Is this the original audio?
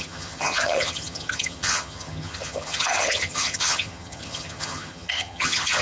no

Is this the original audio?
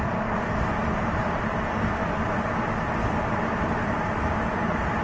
yes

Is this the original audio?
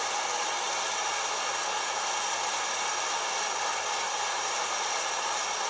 yes